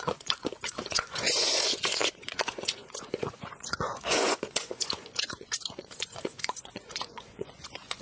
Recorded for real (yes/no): no